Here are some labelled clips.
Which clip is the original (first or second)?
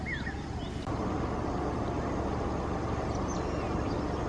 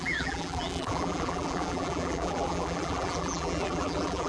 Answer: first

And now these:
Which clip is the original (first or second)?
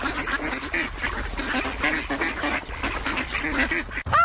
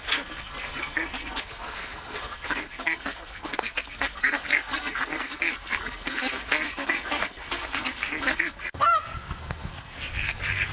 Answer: first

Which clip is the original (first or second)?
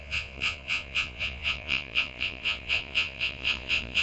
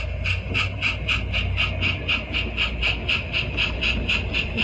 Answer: second